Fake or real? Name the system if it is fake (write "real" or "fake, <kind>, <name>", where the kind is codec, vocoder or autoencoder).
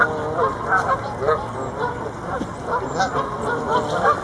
real